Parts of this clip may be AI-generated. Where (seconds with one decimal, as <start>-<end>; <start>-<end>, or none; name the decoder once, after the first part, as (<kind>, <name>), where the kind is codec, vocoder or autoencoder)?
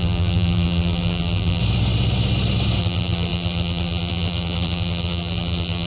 0.0-1.6 (vocoder, BigVGAN v2); 2.8-5.9